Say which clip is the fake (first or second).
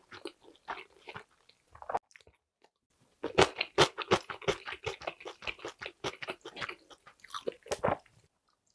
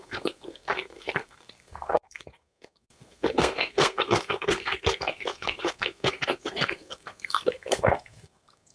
second